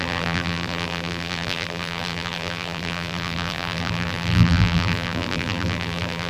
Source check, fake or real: fake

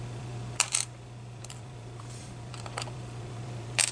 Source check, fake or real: fake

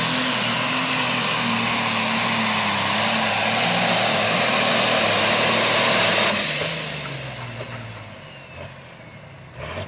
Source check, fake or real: real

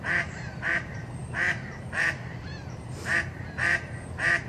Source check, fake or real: fake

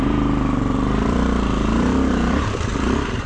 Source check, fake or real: fake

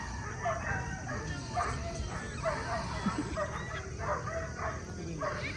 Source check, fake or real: real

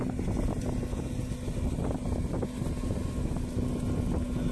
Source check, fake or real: real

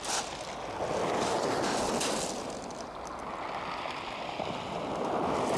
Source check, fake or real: real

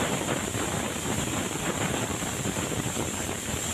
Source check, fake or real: fake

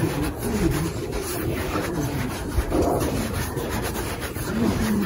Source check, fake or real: fake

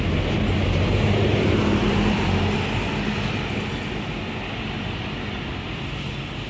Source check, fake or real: real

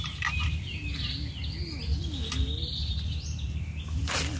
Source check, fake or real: real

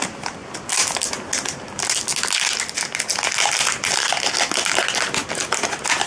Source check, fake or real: real